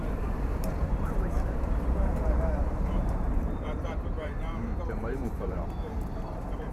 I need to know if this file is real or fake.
fake